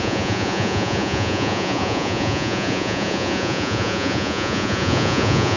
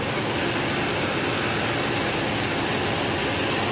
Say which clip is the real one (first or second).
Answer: second